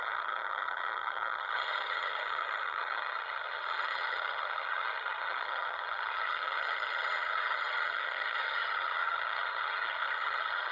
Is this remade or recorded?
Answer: remade